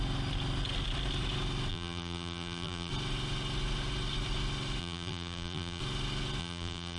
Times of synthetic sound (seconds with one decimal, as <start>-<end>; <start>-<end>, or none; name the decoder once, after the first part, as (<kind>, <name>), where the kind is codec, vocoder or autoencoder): 1.7-2.9 (vocoder, BigVGAN v2); 4.8-5.8; 6.4-7.0